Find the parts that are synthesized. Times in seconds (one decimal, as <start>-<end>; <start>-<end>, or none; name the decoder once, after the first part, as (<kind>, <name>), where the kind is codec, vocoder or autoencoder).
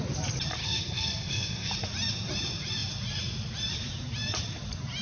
0.6-1.7 (codec, SNAC)